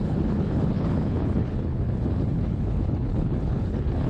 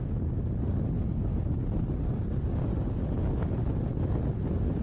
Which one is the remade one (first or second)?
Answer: first